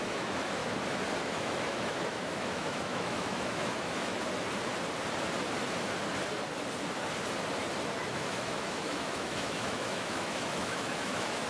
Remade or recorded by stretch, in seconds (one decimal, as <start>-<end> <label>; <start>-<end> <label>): 0.0-0.6 remade; 0.6-1.2 recorded; 1.2-4.1 remade; 4.1-8.1 recorded; 8.1-11.5 remade